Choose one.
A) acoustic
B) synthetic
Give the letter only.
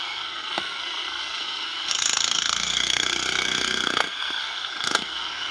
B